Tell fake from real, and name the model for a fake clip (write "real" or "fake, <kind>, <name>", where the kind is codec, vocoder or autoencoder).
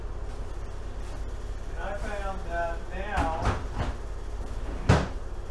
real